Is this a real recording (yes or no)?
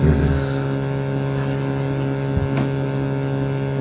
yes